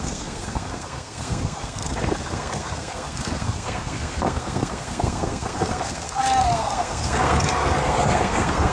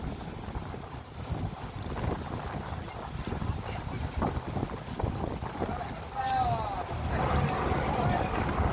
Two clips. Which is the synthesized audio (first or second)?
first